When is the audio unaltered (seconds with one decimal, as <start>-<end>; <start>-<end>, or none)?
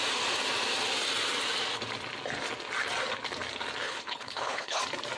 0.0-3.8; 4.8-5.2